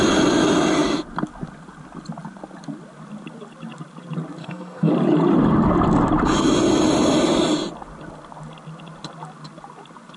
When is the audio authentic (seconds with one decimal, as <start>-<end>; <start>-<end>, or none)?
0.0-4.4; 4.9-10.2